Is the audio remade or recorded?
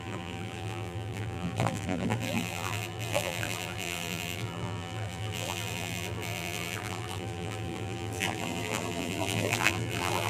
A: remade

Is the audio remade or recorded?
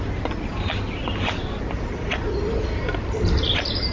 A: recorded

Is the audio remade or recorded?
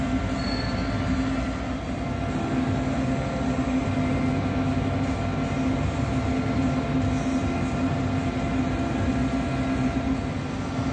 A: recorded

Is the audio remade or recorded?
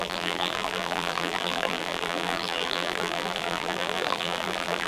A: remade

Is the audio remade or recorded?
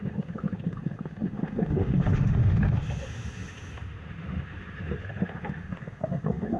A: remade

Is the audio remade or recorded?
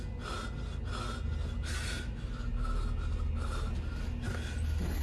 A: recorded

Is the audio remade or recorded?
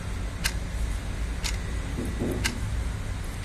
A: recorded